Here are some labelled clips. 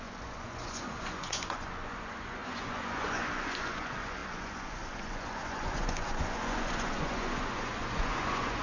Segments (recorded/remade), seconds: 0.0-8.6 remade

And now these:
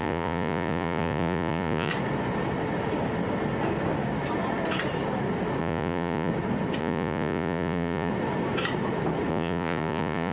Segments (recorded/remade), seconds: 0.0-1.9 remade; 1.9-5.6 recorded; 5.6-6.3 remade; 6.3-6.8 recorded; 6.8-8.1 remade; 8.1-9.3 recorded; 9.3-10.3 remade

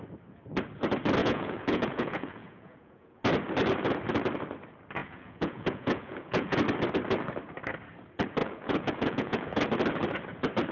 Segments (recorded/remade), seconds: 0.0-1.2 recorded; 1.2-3.2 remade; 3.2-5.0 recorded; 5.0-6.6 remade; 6.6-8.4 recorded; 8.4-9.6 remade; 9.6-10.7 recorded

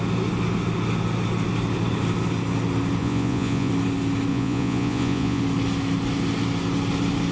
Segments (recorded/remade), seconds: 0.0-3.0 recorded; 3.0-3.7 remade; 3.7-4.3 recorded; 4.3-5.4 remade; 5.4-7.3 recorded

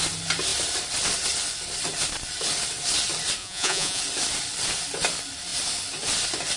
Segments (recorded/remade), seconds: 0.0-3.4 recorded; 3.4-4.0 remade; 4.0-6.6 recorded

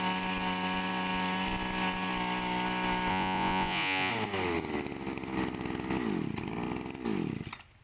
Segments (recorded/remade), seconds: 0.0-3.1 recorded; 3.1-4.1 remade; 4.1-7.8 recorded